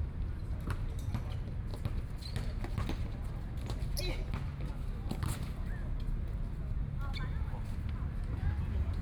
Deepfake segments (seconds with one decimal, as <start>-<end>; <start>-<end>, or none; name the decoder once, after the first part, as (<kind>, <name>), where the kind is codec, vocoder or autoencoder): 0.4-1.1 (vocoder, BigVGAN v2)